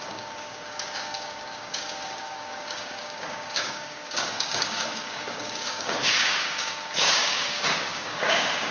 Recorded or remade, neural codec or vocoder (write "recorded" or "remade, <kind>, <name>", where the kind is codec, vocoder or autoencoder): remade, codec, DAC